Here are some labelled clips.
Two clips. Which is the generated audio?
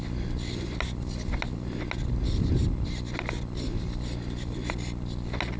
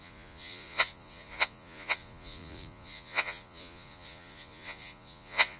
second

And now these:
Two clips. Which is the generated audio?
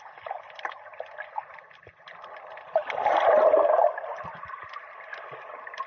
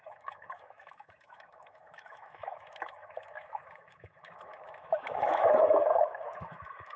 second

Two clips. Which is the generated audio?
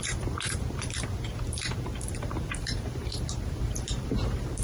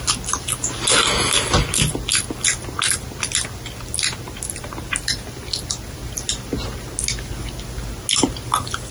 first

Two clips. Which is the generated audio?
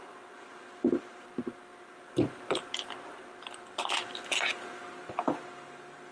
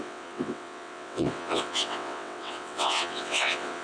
second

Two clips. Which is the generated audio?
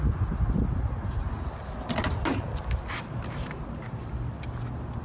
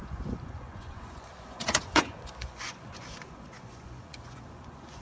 second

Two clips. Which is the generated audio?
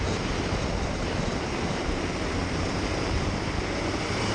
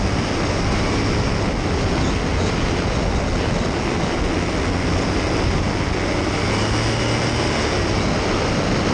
first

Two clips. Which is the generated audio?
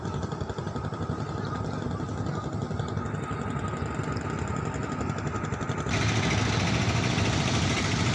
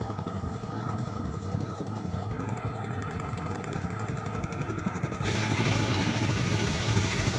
second